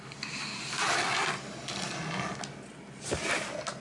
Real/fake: real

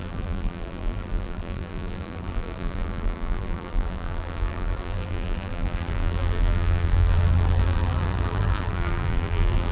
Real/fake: fake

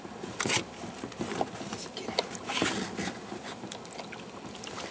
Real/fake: real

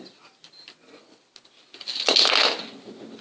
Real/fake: real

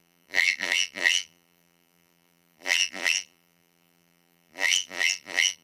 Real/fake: fake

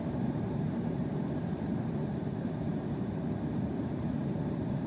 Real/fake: fake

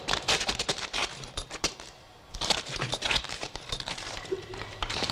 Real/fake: fake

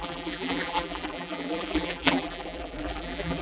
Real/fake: fake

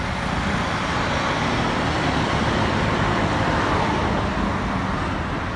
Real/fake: fake